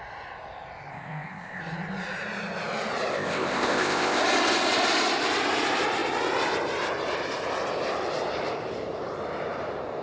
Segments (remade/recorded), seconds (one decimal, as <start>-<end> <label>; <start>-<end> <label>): 0.0-0.9 recorded; 0.9-1.6 remade; 1.6-3.1 recorded; 3.1-4.2 remade; 4.2-10.0 recorded